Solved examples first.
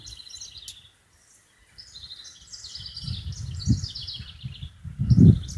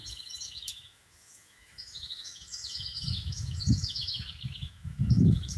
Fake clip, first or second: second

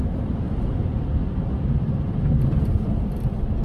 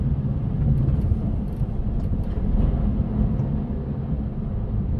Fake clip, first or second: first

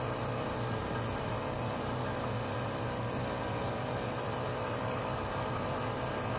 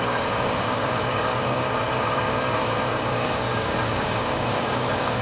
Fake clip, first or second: second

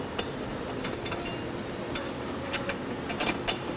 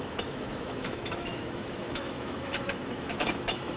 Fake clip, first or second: second